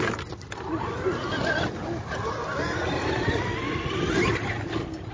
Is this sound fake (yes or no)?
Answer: no